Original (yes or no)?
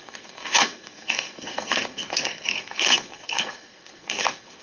no